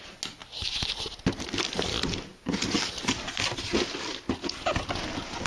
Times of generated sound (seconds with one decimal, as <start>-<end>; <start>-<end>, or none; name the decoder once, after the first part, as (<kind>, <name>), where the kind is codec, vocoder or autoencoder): none